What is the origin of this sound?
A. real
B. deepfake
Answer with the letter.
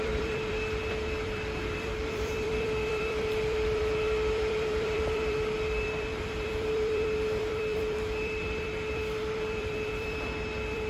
B